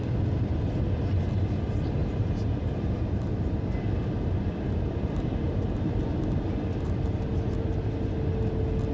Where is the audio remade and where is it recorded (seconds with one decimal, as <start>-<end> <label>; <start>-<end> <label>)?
0.0-2.0 recorded; 2.0-3.2 remade; 3.2-8.9 recorded